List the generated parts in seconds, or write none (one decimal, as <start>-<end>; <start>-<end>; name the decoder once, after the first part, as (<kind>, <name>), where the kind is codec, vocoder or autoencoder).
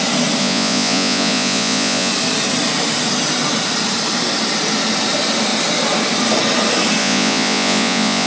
0.4-2.1 (vocoder, Vocos); 7.0-8.3